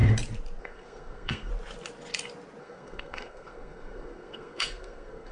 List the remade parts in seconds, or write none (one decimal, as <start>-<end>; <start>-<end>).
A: 0.6-1.5; 2.6-5.3